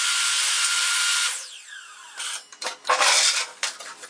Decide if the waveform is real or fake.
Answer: real